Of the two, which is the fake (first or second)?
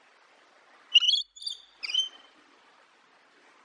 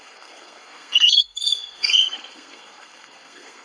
second